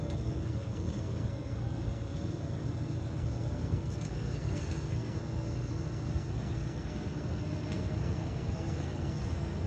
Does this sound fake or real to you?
fake